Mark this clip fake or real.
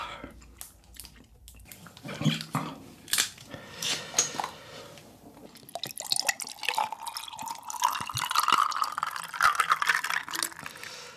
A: real